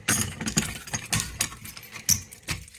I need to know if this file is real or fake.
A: real